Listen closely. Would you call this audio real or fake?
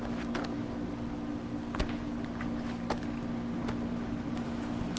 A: real